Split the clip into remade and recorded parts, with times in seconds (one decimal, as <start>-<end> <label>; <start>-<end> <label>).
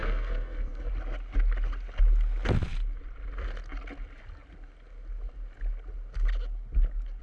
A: 0.0-0.9 remade; 0.9-7.2 recorded